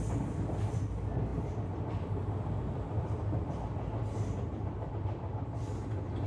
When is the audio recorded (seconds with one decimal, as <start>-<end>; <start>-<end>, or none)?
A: 0.0-6.3